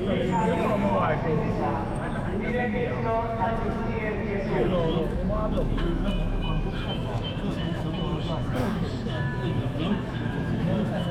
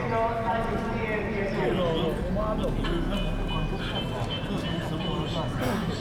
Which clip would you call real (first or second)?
second